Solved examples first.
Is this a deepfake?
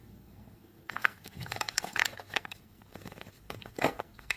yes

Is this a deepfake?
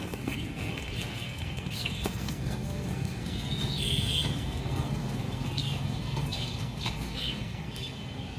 yes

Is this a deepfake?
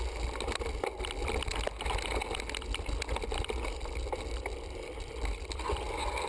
no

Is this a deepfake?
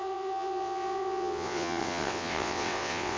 yes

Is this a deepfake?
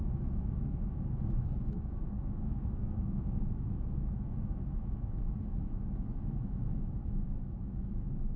yes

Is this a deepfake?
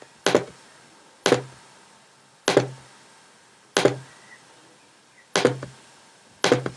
no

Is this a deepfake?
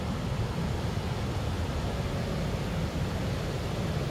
no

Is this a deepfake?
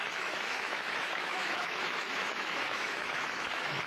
yes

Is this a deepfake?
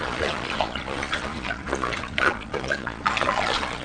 yes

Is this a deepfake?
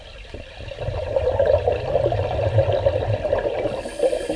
no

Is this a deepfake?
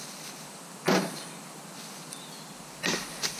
no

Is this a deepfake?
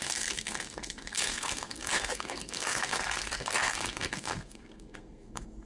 yes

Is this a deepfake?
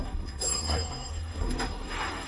yes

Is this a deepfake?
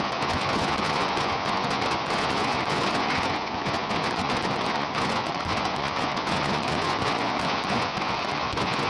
yes